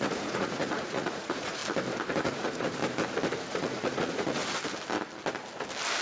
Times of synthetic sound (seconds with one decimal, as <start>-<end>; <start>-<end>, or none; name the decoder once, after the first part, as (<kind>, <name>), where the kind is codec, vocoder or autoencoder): 0.0-1.6 (vocoder, Vocos); 2.2-2.8; 3.4-4.4